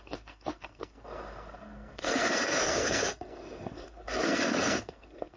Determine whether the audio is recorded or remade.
remade